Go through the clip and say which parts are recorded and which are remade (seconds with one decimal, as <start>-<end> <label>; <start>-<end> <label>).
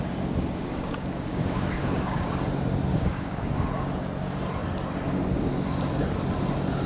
0.0-0.7 recorded; 0.7-2.4 remade; 2.4-2.9 recorded; 2.9-3.7 remade; 3.7-6.9 recorded